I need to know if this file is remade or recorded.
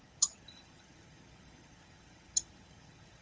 remade